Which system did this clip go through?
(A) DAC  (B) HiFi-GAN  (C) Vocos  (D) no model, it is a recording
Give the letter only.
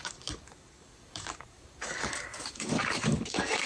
A